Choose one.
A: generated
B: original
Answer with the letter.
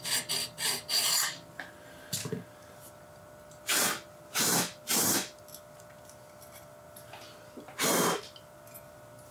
B